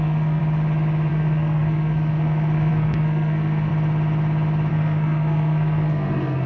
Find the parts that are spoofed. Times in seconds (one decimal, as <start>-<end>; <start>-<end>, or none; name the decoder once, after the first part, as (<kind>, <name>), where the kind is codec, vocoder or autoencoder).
0.0-0.4 (codec, SNAC); 1.1-3.7; 4.7-6.5